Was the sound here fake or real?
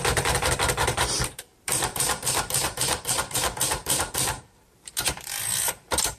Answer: fake